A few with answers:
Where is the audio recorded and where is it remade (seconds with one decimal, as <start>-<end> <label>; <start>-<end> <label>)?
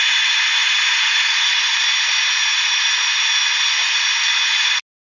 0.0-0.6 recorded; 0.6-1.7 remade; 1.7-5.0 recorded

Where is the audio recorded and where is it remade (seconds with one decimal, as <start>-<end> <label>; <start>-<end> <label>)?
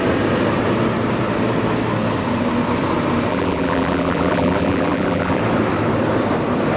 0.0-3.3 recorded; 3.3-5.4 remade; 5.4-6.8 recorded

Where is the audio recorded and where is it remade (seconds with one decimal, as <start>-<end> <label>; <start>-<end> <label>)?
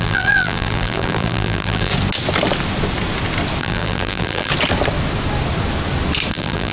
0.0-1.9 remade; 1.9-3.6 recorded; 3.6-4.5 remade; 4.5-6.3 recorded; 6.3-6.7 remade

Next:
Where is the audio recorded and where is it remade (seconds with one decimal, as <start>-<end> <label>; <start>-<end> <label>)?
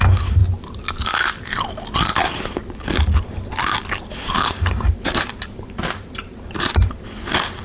0.0-0.4 remade; 0.4-4.1 recorded; 4.1-7.6 remade